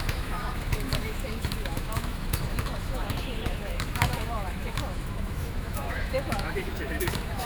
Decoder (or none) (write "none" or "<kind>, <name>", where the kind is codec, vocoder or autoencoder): autoencoder, DAC-VAE